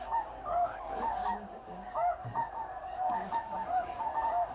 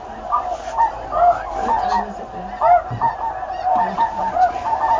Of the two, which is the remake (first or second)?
first